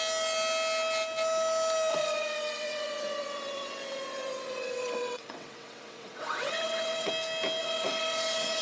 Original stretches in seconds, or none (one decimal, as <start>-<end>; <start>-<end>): 0.0-1.9; 7.1-7.6